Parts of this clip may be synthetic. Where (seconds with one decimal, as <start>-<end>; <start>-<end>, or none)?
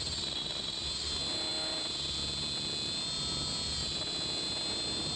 none